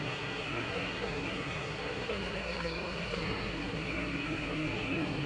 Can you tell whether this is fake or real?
fake